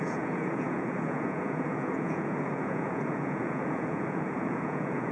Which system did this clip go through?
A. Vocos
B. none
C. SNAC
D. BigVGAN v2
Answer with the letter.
A